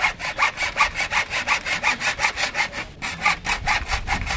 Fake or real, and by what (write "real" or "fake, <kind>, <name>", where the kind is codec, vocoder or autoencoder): real